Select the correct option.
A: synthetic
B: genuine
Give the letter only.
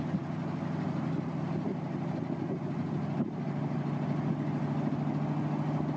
B